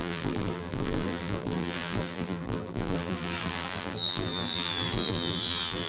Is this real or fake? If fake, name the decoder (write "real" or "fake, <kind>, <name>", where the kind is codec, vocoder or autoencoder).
fake, vocoder, BigVGAN v2